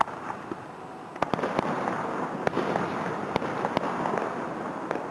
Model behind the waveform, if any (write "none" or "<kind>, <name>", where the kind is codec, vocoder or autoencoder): none